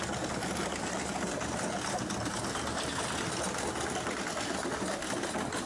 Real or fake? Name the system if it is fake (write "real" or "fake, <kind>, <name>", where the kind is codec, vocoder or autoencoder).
real